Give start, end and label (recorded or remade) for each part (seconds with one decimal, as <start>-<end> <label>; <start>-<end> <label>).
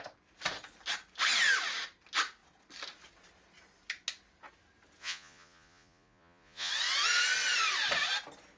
0.0-5.0 recorded; 5.0-6.7 remade; 6.7-8.6 recorded